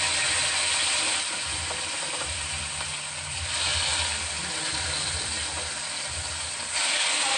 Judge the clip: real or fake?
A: real